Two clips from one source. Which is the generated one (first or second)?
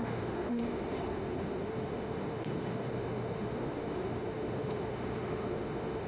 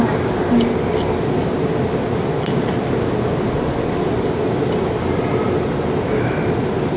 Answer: first